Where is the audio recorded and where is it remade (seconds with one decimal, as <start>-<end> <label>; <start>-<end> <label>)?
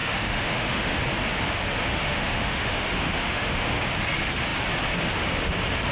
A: 0.0-1.0 remade; 1.0-1.9 recorded; 1.9-3.8 remade; 3.8-5.9 recorded